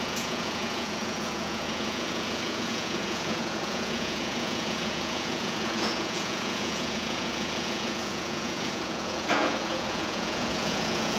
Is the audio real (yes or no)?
no